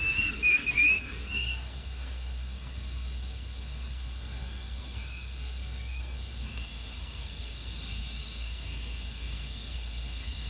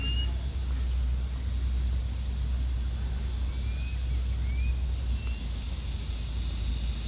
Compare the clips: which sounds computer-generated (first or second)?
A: first